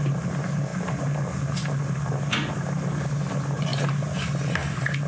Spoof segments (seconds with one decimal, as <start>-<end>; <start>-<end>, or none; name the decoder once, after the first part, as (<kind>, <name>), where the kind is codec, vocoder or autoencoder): none